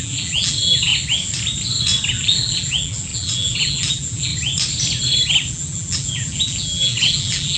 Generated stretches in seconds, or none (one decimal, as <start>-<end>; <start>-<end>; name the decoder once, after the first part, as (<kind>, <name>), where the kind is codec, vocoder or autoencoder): 0.0-0.9 (vocoder, BigVGAN v2); 2.1-4.3; 5.5-7.6

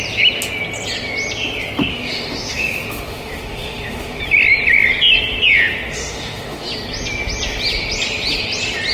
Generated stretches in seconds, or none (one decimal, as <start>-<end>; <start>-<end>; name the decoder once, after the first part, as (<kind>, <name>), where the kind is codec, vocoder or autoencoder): 1.9-4.2 (autoencoder, DAC-VAE); 5.9-6.7

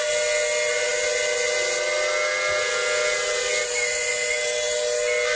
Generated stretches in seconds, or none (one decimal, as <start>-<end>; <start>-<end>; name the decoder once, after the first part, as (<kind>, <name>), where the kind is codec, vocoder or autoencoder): none

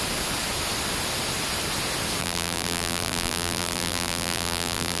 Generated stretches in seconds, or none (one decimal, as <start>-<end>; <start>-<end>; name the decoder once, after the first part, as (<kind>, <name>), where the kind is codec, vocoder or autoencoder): 2.2-5.0 (vocoder, BigVGAN v2)

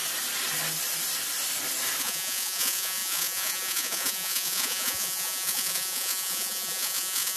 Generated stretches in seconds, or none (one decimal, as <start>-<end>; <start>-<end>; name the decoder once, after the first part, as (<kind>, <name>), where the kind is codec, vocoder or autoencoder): 2.0-7.4 (vocoder, Vocos)

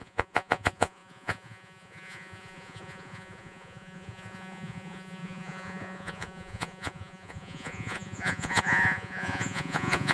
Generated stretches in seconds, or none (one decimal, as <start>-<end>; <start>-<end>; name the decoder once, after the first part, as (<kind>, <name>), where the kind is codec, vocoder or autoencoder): 0.0-10.1 (vocoder, Vocos)

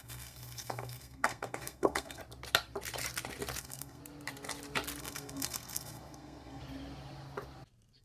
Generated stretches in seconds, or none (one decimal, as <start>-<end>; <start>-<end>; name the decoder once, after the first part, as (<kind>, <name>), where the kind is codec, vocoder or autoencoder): 0.0-2.2 (codec, SNAC); 3.6-4.0; 5.0-6.6